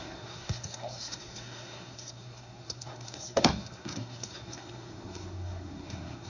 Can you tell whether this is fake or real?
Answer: fake